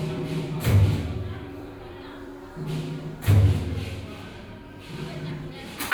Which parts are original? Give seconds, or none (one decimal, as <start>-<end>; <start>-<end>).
2.3-4.4